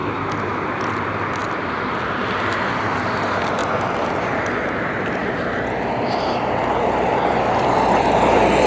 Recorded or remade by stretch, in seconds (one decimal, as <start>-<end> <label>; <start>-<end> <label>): 0.0-0.8 recorded; 0.8-3.6 remade; 3.6-4.1 recorded; 4.1-5.2 remade; 5.2-7.6 recorded; 7.6-8.7 remade